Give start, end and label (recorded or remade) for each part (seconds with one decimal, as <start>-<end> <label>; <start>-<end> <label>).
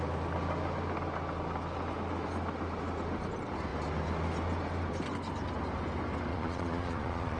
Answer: 0.0-6.3 recorded; 6.3-7.4 remade